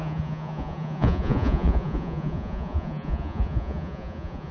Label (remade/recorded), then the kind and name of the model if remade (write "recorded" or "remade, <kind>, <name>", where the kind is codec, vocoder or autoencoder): remade, vocoder, Vocos